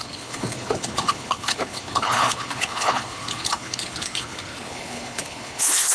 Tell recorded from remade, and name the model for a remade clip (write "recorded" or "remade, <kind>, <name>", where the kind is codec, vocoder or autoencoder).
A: remade, codec, HILCodec